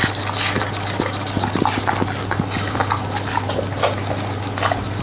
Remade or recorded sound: recorded